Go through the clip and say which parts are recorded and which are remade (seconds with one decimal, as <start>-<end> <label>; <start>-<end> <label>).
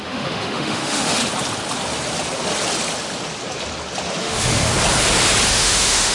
0.0-1.2 remade; 1.2-4.2 recorded; 4.2-4.7 remade; 4.7-5.5 recorded; 5.5-6.1 remade